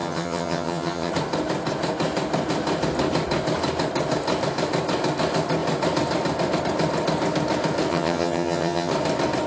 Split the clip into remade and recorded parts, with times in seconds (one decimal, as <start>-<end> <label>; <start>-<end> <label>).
0.0-1.1 remade; 1.1-7.9 recorded; 7.9-8.9 remade; 8.9-9.5 recorded